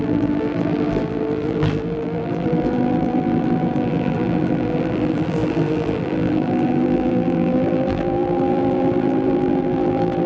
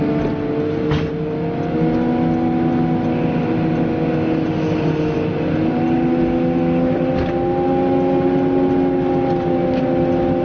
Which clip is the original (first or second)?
second